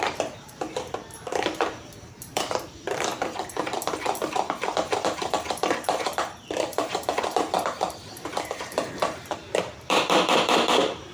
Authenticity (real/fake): fake